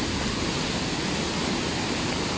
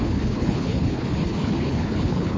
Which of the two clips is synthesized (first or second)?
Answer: second